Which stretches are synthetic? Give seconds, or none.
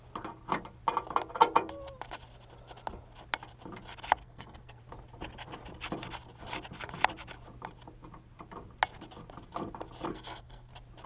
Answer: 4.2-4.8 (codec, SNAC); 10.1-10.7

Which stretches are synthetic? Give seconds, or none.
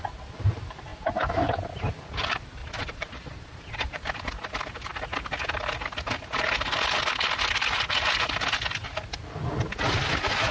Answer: 2.6-4.0 (vocoder, Vocos)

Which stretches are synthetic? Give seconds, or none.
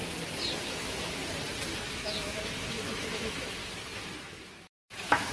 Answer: 0.6-1.2 (autoencoder, DAC-VAE); 1.8-3.6; 4.2-5.3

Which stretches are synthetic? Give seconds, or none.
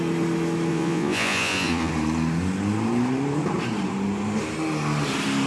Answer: 0.7-1.9 (vocoder, Vocos)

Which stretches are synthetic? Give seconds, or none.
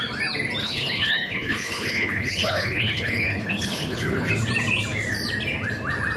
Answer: 0.6-4.3 (codec, HILCodec)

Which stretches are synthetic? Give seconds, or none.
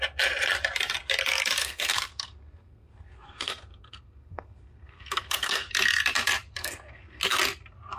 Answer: 1.6-5.7 (codec, SNAC); 6.6-7.2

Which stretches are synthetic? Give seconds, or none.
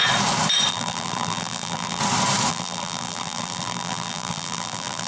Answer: 0.7-2.0 (vocoder, BigVGAN v2); 2.5-5.1